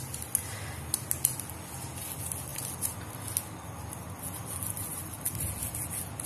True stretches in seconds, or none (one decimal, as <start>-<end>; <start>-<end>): 0.0-6.3